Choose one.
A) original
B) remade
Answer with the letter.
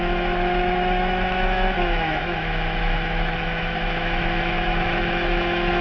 B